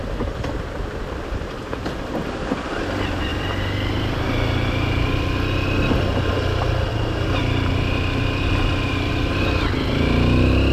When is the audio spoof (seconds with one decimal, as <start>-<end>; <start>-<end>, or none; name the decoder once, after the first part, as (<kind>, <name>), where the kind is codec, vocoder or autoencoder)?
none